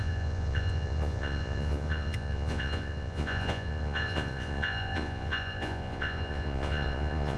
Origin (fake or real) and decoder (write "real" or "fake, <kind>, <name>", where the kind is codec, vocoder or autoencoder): fake, vocoder, Vocos